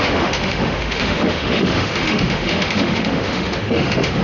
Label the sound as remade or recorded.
remade